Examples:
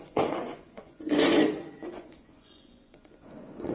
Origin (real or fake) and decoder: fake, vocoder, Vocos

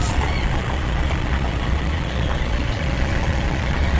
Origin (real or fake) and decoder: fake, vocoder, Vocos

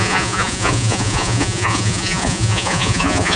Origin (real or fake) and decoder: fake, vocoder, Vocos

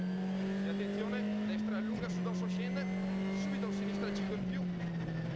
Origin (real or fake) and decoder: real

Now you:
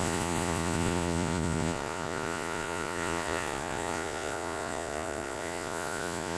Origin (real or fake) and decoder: fake, vocoder, Vocos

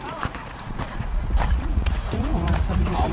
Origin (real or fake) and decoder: fake, vocoder, Vocos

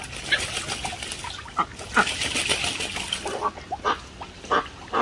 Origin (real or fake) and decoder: real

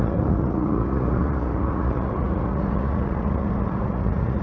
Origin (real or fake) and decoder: fake, vocoder, Vocos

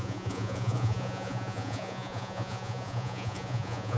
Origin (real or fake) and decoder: fake, vocoder, Vocos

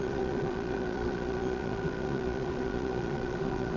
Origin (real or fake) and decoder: fake, vocoder, Vocos